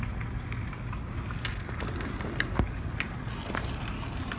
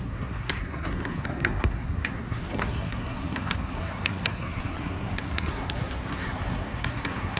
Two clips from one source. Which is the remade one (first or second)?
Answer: second